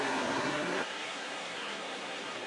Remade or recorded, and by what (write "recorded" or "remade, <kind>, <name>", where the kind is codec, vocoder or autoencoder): remade, codec, SNAC